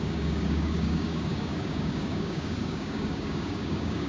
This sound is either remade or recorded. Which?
remade